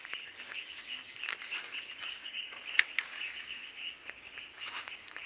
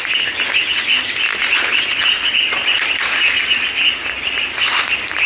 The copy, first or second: first